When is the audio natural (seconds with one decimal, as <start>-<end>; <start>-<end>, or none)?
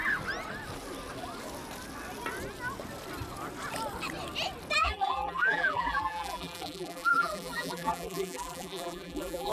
0.0-4.8